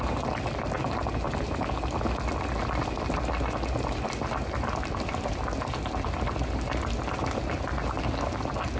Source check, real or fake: real